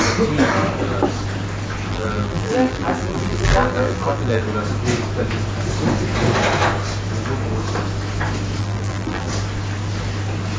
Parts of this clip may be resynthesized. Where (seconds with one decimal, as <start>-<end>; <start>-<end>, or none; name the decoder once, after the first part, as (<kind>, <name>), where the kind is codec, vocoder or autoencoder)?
1.9-4.4 (vocoder, BigVGAN v2); 8.6-9.3